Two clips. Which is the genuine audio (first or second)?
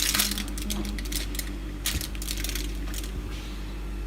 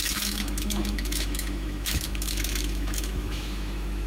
first